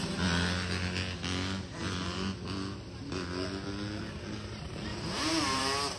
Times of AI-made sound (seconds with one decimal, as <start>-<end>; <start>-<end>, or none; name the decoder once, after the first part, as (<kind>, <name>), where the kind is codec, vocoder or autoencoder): 4.9-5.6 (vocoder, BigVGAN v2)